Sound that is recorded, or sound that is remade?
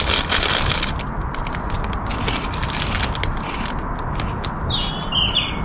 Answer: recorded